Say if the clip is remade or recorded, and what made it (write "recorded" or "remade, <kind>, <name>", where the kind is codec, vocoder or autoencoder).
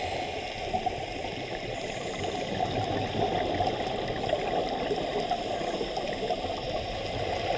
recorded